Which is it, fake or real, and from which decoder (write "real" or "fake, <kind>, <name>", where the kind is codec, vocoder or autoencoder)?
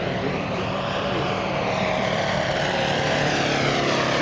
fake, vocoder, BigVGAN v2